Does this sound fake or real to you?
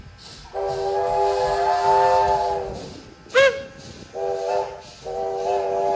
real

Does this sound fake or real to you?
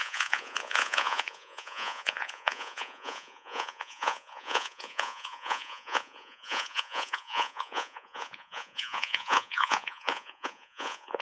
fake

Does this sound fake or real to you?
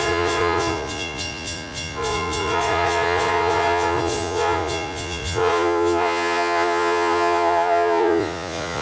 fake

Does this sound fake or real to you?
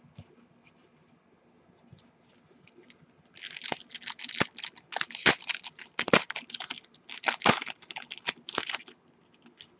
real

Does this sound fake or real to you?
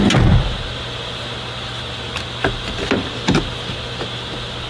real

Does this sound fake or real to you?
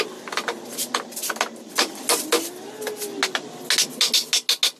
real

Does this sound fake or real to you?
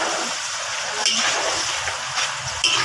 real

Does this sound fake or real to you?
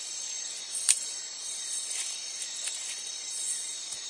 fake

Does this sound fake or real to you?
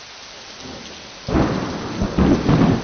real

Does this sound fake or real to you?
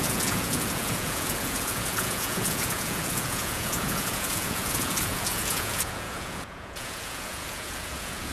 fake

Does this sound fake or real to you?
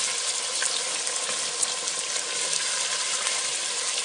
real